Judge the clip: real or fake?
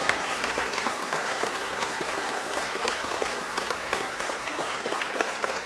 fake